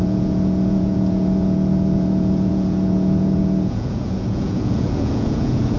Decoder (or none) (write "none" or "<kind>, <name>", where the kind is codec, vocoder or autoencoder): vocoder, Vocos